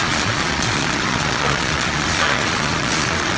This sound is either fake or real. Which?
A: fake